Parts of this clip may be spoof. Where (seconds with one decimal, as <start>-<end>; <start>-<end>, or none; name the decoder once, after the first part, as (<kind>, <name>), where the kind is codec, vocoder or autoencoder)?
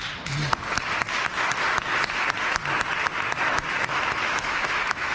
3.5-5.1 (autoencoder, DAC-VAE)